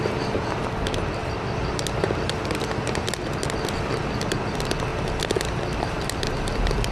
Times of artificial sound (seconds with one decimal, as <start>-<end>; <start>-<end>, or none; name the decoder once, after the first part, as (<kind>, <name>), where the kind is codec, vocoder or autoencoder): none